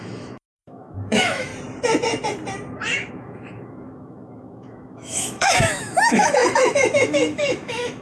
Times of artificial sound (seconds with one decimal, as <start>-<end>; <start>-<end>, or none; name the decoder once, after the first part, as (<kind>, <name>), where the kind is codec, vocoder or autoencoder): 0.0-1.5 (autoencoder, DAC-VAE); 3.1-8.0